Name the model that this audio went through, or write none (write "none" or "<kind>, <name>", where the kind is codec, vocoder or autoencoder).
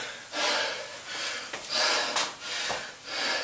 none